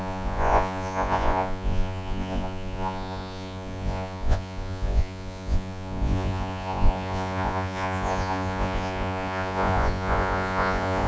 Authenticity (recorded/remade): remade